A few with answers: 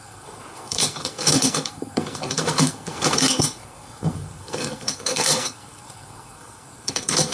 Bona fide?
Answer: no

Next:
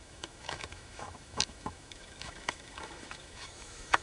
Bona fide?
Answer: no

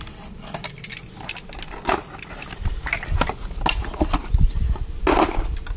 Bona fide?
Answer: yes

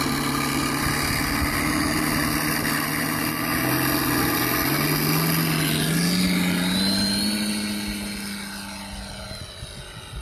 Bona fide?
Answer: yes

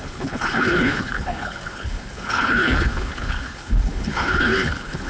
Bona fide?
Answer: no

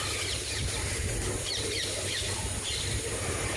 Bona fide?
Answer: no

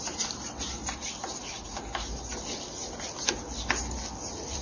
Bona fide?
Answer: yes